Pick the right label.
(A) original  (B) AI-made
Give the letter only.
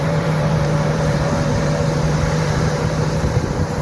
B